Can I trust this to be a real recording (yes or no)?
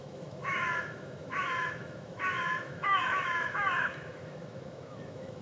no